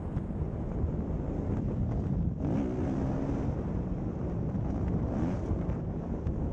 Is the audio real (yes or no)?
yes